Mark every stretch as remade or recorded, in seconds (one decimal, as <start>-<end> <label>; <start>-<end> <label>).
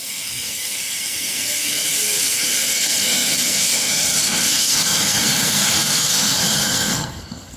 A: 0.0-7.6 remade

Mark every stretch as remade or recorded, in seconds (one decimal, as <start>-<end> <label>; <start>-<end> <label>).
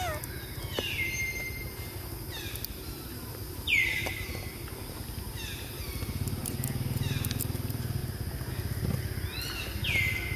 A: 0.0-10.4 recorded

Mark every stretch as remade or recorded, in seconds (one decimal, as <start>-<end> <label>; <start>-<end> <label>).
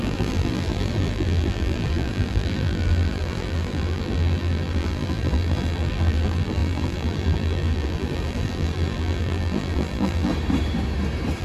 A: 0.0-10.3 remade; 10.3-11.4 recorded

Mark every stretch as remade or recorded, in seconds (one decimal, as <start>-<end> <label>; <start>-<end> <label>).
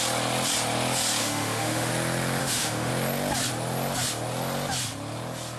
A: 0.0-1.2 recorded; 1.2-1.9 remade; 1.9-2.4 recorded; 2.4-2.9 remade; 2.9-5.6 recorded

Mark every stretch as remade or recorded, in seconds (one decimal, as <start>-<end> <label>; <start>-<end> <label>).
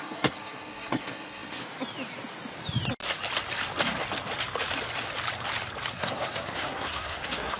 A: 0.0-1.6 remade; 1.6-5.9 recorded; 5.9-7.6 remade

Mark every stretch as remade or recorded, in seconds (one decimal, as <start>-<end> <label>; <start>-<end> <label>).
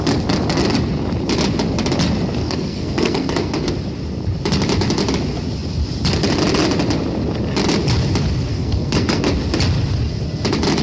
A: 0.0-2.4 recorded; 2.4-3.7 remade; 3.7-8.5 recorded; 8.5-9.3 remade; 9.3-10.8 recorded